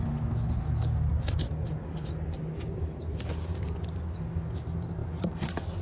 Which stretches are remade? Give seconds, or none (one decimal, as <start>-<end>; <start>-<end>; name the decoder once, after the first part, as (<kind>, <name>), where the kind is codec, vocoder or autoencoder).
none